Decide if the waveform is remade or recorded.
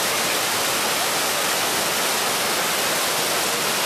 recorded